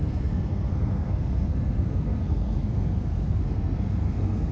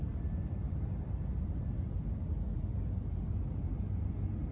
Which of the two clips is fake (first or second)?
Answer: first